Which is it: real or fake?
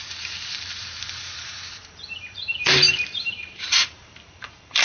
fake